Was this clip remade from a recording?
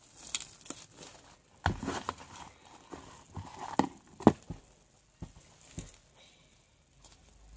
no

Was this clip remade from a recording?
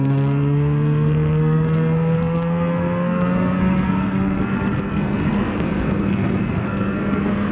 yes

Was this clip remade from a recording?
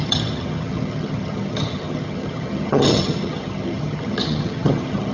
yes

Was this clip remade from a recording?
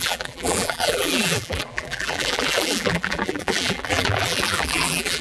yes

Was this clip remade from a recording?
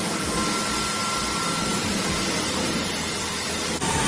no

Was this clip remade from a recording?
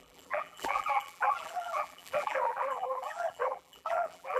yes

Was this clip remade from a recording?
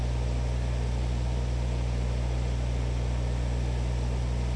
no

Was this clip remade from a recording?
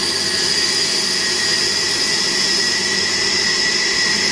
yes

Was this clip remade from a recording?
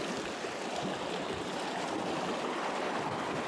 no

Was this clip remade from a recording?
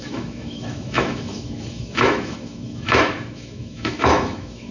yes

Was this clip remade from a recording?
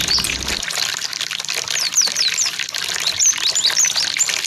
no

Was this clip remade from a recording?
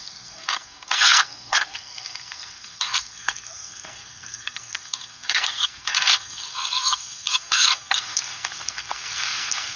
yes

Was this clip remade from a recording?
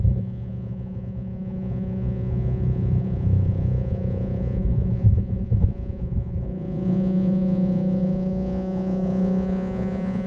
yes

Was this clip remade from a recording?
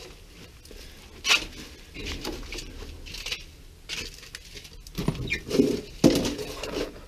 no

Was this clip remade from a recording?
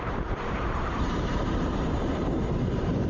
yes